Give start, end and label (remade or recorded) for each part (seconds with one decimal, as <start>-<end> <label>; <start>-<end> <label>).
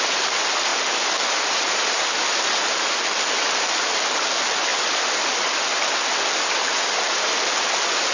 0.0-8.1 recorded